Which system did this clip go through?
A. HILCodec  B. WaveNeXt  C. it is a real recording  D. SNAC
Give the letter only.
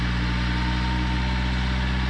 C